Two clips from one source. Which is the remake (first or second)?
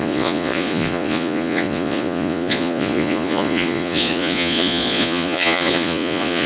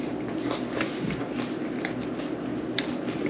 first